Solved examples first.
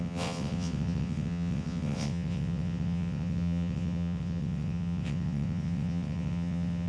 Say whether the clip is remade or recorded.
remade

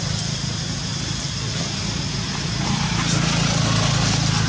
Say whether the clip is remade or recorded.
recorded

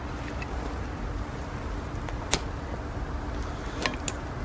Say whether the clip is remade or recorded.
recorded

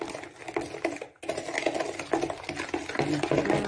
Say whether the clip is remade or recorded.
recorded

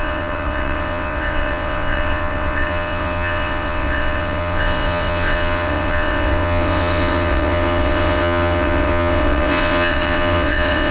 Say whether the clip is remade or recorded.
remade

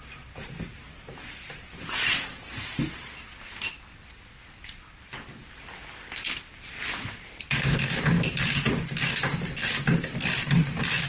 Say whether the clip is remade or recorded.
recorded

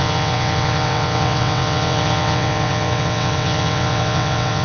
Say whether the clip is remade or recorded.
remade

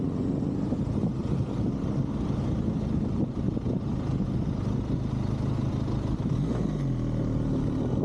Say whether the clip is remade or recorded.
recorded